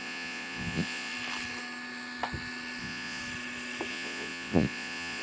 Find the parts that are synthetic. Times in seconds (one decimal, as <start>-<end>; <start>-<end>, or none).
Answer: 0.0-1.1; 2.8-3.2; 3.9-5.2